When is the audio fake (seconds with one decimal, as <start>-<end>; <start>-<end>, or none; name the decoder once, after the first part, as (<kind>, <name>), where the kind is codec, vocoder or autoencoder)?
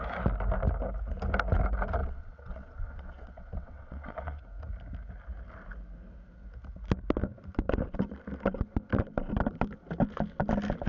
2.0-4.4 (vocoder, WaveNeXt)